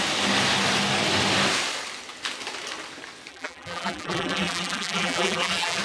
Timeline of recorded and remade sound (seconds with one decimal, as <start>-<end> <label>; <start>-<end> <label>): 0.0-3.3 recorded; 3.3-5.8 remade

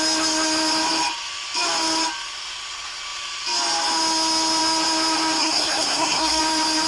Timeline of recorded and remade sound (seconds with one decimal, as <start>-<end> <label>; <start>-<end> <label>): 0.0-5.4 recorded; 5.4-6.4 remade; 6.4-6.9 recorded